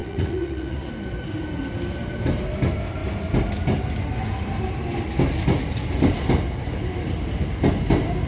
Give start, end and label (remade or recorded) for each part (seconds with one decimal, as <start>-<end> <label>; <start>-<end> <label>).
0.0-0.9 remade; 0.9-8.3 recorded